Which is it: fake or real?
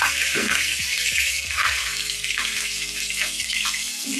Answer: fake